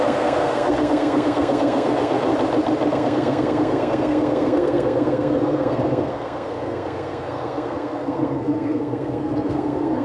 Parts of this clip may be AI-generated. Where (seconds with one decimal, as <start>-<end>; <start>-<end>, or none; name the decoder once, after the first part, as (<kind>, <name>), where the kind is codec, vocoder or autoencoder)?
0.0-2.3 (codec, SNAC); 2.9-10.0